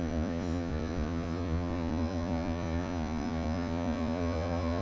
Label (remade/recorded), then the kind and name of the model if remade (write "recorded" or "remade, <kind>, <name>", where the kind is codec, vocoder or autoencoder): remade, vocoder, Vocos